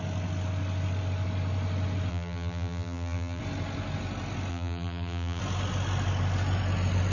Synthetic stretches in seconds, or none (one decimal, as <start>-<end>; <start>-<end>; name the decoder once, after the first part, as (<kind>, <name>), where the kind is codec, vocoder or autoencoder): 2.1-3.4 (vocoder, BigVGAN v2); 4.5-5.4